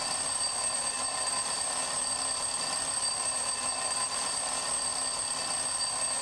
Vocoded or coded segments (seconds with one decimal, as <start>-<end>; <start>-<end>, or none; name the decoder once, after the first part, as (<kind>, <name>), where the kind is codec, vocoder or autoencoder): 0.0-4.9 (vocoder, BigVGAN v2); 5.8-6.2